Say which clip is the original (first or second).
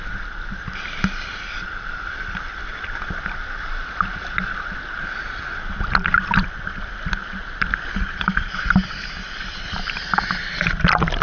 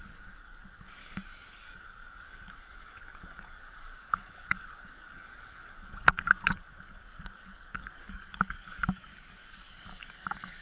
first